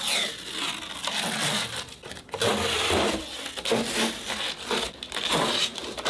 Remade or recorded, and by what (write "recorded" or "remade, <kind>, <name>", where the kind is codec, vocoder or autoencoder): recorded